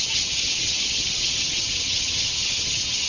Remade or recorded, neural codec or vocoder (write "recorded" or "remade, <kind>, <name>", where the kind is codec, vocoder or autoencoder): remade, vocoder, HiFi-GAN